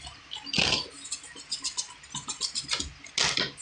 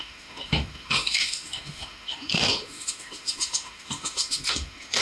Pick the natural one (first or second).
first